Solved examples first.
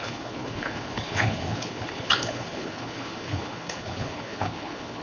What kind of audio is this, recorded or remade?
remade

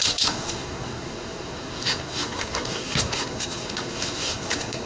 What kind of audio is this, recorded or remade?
remade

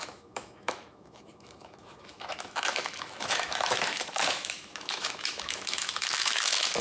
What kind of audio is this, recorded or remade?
remade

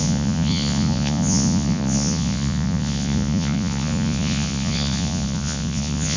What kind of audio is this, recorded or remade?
remade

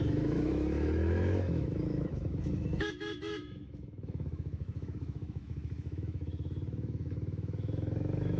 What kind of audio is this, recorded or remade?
remade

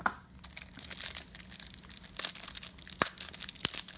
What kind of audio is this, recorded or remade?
recorded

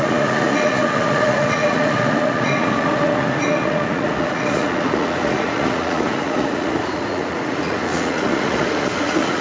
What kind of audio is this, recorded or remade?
remade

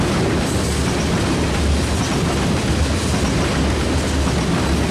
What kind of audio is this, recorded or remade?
recorded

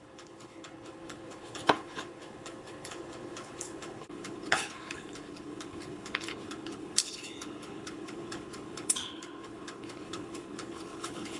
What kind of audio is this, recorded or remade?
remade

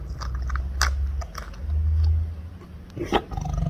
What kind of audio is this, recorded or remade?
recorded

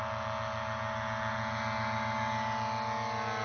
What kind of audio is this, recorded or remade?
recorded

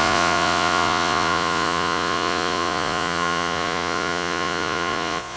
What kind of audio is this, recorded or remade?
remade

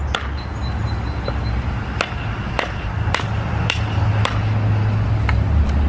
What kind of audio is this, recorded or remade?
recorded